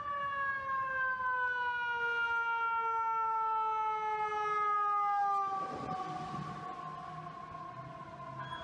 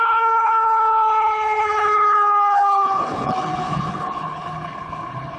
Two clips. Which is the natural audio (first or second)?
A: first